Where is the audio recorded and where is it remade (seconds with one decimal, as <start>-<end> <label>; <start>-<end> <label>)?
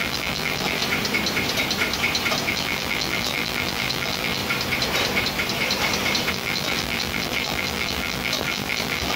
0.0-0.8 remade; 0.8-2.5 recorded; 2.5-4.4 remade; 4.4-6.3 recorded; 6.3-9.2 remade